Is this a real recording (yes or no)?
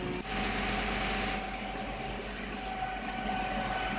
yes